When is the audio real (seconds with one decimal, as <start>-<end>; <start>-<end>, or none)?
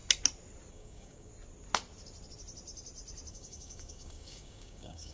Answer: 0.0-0.7; 1.3-3.3